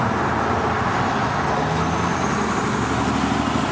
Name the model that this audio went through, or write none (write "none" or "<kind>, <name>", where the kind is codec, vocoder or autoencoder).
none